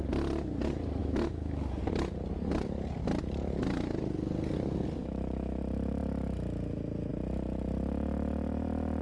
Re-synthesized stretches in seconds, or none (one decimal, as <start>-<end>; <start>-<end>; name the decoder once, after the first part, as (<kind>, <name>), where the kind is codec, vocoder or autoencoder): 1.0-1.7 (autoencoder, DAC-VAE); 5.0-5.6